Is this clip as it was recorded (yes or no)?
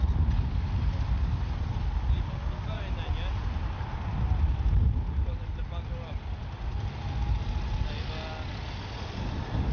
yes